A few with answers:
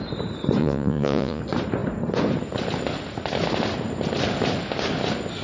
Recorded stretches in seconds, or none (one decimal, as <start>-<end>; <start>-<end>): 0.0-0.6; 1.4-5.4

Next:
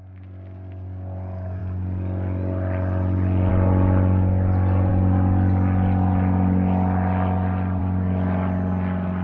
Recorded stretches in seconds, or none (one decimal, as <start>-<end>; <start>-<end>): 0.0-9.2

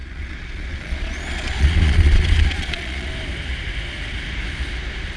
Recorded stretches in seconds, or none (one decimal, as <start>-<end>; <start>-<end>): 3.1-5.2

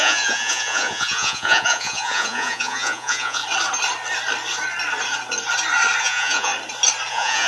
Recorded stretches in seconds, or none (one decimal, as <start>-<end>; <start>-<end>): 3.4-6.0; 6.5-7.1